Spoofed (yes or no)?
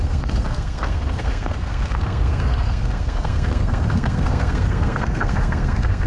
yes